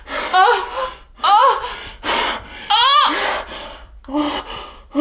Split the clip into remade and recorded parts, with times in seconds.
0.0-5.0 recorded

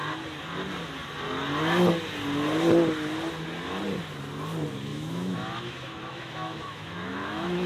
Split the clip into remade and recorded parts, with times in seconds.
0.0-4.9 recorded; 4.9-7.7 remade

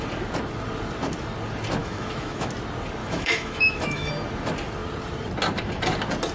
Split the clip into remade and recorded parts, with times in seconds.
0.0-1.8 recorded; 1.8-2.5 remade; 2.5-3.0 recorded; 3.0-4.1 remade; 4.1-6.3 recorded

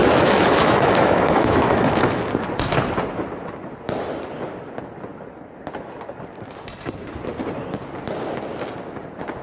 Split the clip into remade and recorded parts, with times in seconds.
0.0-2.2 remade; 2.2-9.4 recorded

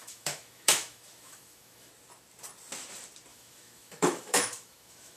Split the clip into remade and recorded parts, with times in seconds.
0.0-1.9 remade; 1.9-3.3 recorded; 3.3-5.2 remade

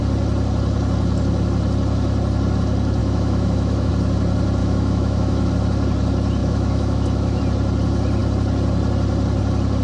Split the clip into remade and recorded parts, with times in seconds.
0.0-3.0 recorded; 3.0-3.9 remade; 3.9-4.6 recorded; 4.6-5.5 remade; 5.5-6.4 recorded; 6.4-7.4 remade; 7.4-9.8 recorded

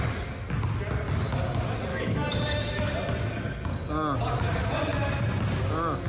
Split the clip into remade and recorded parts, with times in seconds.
0.0-1.9 recorded; 1.9-2.9 remade; 2.9-6.1 recorded

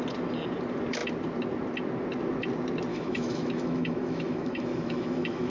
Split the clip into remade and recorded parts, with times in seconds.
0.0-2.9 recorded; 2.9-5.5 remade